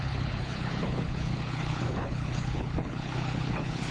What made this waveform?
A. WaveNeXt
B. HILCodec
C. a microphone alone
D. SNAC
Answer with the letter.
B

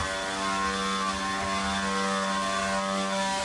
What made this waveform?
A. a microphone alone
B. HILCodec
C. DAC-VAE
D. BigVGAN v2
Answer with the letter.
A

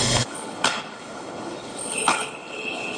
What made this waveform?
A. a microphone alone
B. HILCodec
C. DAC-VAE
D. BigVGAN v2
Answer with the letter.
B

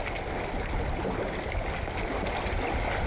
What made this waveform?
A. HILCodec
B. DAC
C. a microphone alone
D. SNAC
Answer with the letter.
C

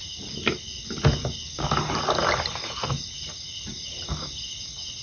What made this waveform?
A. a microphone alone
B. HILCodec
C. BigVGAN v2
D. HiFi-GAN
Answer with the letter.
A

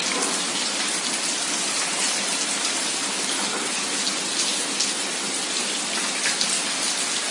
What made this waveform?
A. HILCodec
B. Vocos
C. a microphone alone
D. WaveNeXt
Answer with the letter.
C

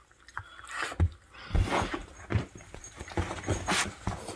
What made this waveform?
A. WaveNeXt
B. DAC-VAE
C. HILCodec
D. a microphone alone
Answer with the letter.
D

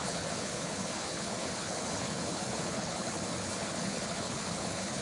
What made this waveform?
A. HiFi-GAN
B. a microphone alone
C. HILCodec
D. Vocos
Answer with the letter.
C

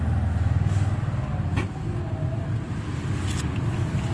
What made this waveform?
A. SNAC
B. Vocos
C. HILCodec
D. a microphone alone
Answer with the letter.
D